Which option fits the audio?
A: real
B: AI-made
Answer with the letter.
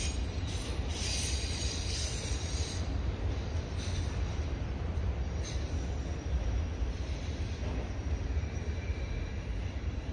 B